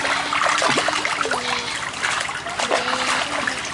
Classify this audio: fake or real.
real